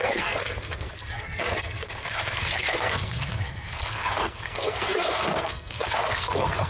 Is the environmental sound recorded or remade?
remade